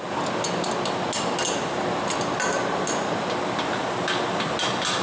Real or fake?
real